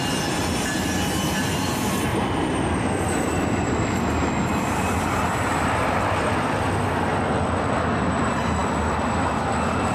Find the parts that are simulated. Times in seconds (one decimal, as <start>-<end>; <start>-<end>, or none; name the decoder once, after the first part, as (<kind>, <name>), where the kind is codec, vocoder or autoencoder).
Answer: 2.1-6.7 (vocoder, BigVGAN v2)